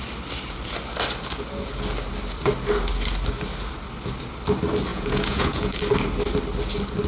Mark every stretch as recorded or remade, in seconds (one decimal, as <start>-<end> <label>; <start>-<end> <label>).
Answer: 0.0-4.9 recorded; 4.9-5.8 remade; 5.8-7.1 recorded